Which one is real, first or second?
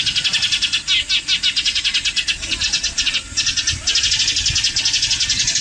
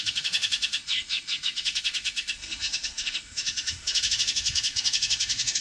first